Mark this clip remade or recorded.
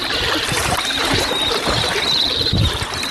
remade